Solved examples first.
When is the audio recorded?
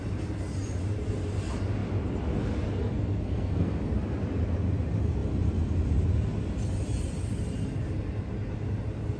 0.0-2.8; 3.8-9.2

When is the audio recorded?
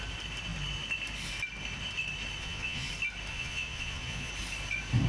0.0-2.4; 2.9-3.3; 4.3-5.1